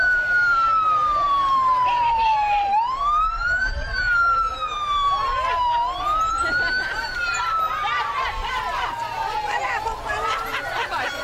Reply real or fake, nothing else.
fake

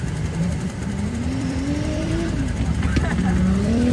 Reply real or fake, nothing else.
fake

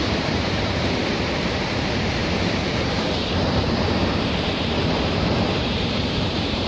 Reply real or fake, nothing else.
fake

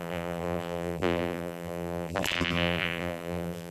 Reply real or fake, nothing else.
fake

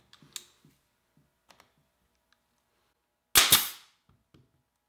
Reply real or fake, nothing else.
real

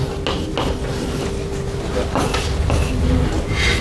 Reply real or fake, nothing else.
real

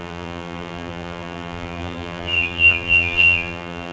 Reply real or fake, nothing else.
fake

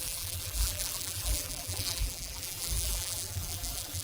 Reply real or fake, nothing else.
fake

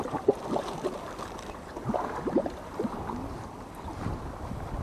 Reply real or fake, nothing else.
real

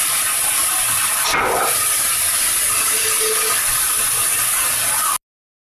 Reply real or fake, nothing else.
real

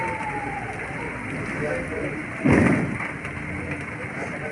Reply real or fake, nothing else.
real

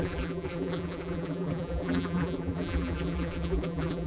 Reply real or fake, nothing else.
fake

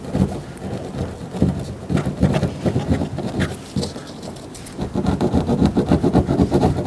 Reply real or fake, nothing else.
real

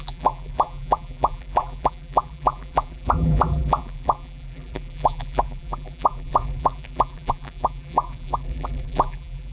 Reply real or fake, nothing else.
fake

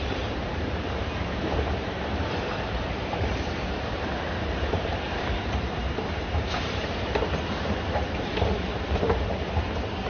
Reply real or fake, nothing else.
fake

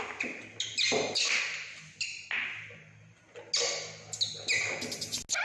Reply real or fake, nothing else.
real